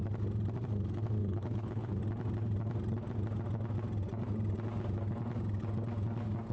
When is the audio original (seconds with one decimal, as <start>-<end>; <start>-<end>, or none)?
0.0-1.2; 2.0-6.5